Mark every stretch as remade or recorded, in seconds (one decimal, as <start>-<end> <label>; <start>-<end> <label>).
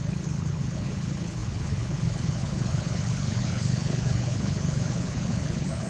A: 0.0-5.9 remade